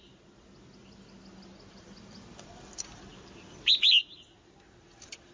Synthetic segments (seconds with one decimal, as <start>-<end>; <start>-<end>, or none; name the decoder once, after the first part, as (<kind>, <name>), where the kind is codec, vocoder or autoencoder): none